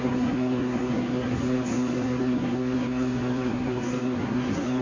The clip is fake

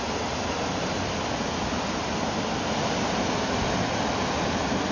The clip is real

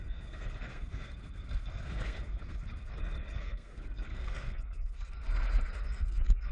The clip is fake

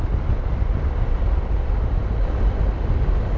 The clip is real